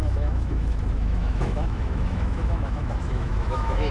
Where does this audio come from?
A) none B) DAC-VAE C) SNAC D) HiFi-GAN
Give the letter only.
B